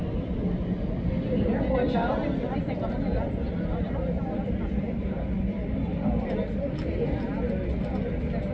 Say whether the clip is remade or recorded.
recorded